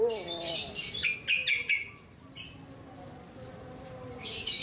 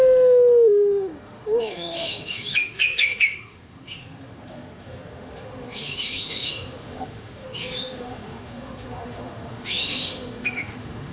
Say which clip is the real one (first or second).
first